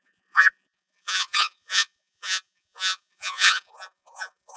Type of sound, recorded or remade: remade